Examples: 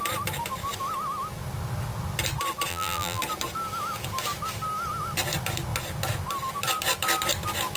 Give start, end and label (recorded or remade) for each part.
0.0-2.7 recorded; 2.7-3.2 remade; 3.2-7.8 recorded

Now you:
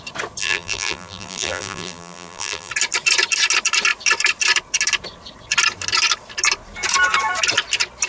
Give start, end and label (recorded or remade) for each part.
0.0-0.4 recorded; 0.4-2.7 remade; 2.7-8.1 recorded

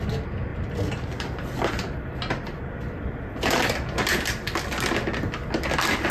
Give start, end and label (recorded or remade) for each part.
0.0-0.5 recorded; 0.5-3.6 remade; 3.6-6.1 recorded